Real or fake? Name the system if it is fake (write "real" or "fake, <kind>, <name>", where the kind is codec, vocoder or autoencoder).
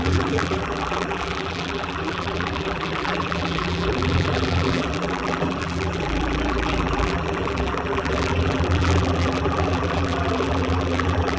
fake, vocoder, BigVGAN v2